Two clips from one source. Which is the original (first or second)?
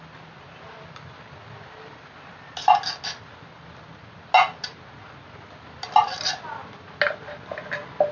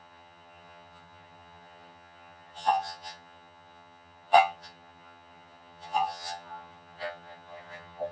first